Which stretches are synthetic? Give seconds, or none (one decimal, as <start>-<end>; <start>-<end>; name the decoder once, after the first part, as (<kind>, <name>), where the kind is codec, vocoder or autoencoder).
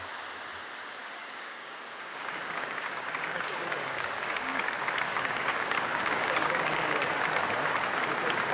1.0-4.6 (codec, DAC); 5.1-7.1